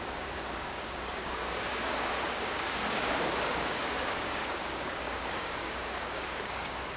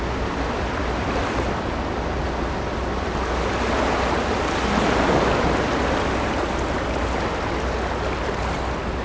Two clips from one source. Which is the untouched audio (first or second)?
second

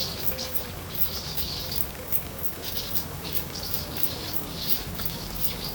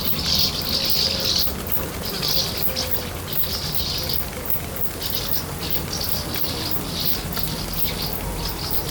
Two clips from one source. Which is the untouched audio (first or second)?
second